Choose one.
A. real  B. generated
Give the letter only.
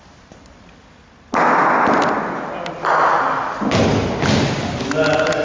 A